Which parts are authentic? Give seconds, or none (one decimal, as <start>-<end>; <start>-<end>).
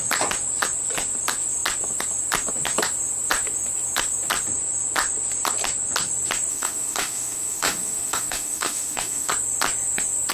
0.0-6.5; 9.3-10.3